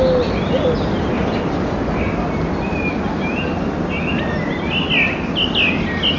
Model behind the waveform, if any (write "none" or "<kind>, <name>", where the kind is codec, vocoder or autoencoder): none